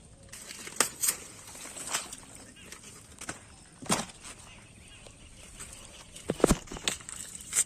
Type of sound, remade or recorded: recorded